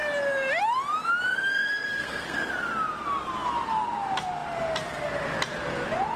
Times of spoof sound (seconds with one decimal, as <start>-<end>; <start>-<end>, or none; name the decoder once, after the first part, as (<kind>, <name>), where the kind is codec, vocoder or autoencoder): 1.3-2.5 (codec, SNAC)